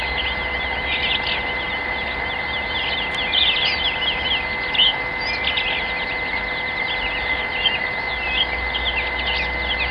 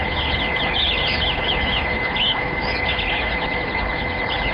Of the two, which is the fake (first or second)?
second